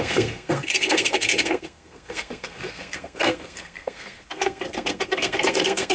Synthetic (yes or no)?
yes